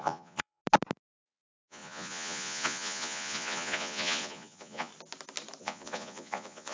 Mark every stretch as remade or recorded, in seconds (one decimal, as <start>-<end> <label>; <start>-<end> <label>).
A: 0.0-0.6 remade; 0.6-1.2 recorded; 1.2-4.9 remade; 4.9-5.6 recorded; 5.6-6.7 remade